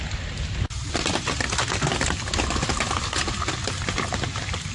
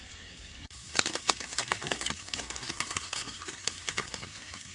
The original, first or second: first